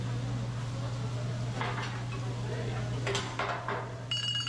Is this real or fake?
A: real